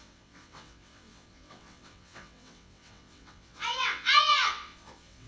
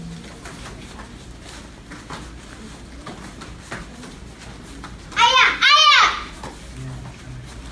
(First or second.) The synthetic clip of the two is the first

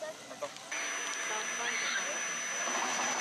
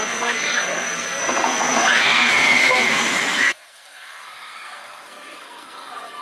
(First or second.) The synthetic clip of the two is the second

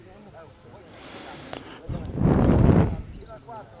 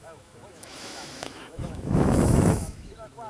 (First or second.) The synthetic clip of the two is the second